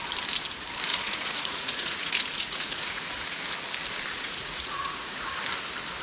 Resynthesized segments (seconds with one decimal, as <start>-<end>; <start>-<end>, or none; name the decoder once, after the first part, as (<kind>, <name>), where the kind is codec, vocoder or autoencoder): 0.9-3.4 (vocoder, Vocos); 4.1-5.3